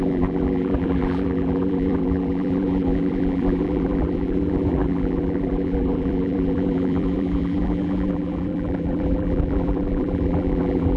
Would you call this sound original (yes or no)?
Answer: no